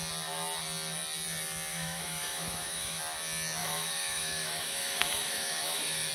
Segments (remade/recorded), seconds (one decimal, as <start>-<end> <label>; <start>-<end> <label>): 0.0-1.7 recorded; 1.7-3.0 remade; 3.0-3.6 recorded; 3.6-6.1 remade